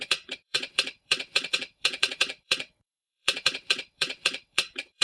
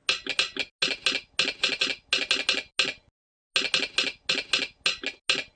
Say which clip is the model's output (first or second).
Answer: first